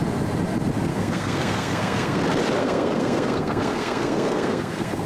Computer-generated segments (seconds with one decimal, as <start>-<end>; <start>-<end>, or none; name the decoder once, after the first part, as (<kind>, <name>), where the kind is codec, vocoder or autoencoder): 0.9-2.2 (codec, SNAC); 2.6-5.1